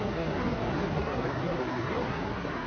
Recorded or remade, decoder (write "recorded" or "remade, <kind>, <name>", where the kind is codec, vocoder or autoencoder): remade, codec, SNAC